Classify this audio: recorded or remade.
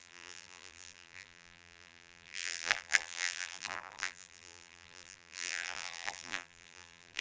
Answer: remade